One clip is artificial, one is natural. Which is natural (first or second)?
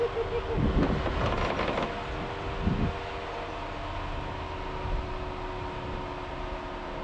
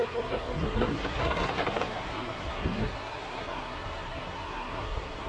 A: first